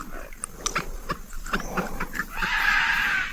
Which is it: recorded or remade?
recorded